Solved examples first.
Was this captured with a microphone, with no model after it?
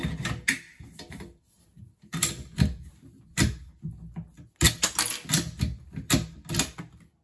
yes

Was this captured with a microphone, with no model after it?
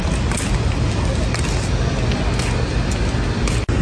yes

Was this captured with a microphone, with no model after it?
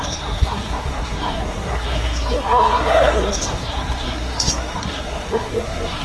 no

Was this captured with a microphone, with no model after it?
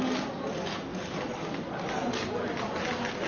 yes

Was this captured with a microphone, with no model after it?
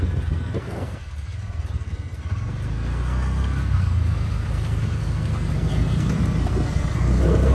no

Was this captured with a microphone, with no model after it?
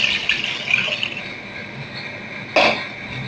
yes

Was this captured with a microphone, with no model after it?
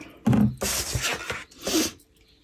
yes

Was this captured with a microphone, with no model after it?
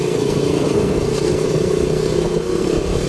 no